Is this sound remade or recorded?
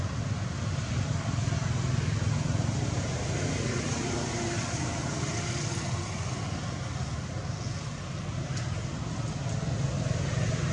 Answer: recorded